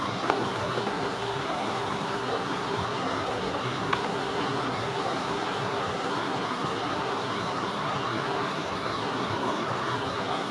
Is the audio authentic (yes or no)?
no